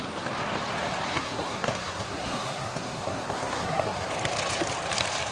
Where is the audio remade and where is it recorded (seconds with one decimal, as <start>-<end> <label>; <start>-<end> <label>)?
0.0-1.1 recorded; 1.1-4.1 remade; 4.1-5.3 recorded